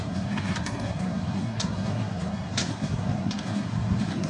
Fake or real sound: fake